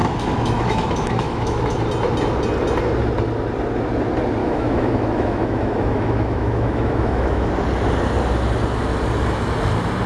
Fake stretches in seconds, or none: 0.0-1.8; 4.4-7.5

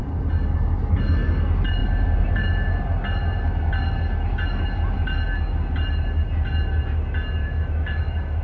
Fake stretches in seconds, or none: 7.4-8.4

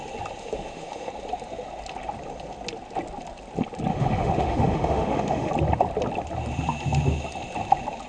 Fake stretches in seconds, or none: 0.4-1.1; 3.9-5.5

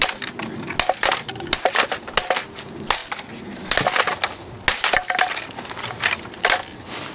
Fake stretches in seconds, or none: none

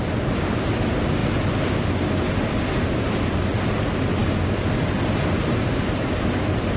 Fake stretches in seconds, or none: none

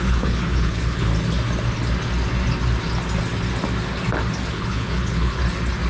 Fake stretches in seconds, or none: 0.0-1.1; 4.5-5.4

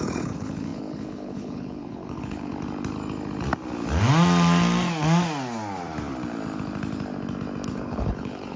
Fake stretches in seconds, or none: 0.0-2.5; 7.7-8.6